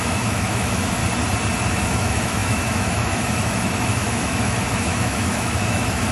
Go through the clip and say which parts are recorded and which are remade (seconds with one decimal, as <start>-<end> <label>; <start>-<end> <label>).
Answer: 0.0-1.0 remade; 1.0-1.7 recorded; 1.7-6.1 remade